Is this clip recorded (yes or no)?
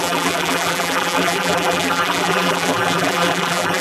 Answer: no